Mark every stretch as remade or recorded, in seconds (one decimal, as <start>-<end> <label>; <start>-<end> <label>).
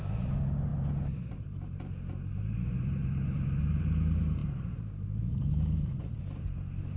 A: 0.0-7.0 remade